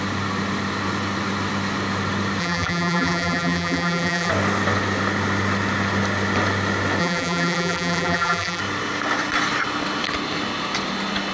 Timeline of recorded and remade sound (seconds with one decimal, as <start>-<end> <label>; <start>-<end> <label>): 0.0-2.4 recorded; 2.4-4.3 remade; 4.3-7.0 recorded; 7.0-8.6 remade; 8.6-11.3 recorded